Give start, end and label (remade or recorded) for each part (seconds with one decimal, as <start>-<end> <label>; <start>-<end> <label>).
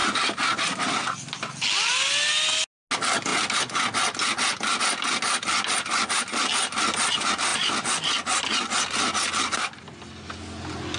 0.0-11.0 recorded